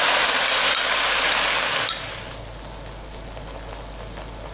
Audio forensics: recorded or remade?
recorded